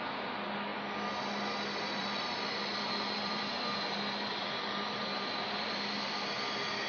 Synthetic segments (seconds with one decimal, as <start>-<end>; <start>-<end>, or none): 2.0-6.1